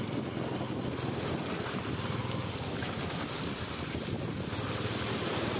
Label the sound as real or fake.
real